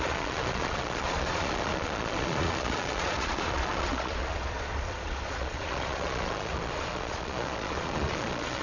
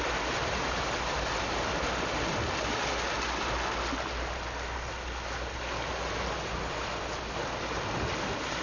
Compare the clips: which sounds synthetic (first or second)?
first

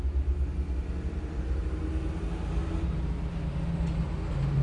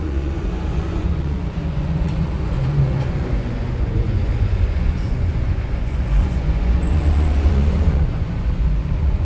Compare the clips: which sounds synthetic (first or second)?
second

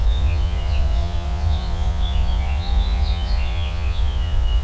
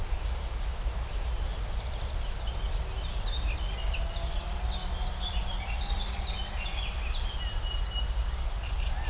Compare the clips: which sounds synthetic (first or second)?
first